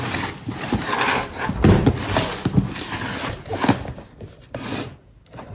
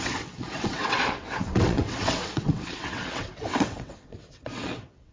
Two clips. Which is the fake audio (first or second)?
second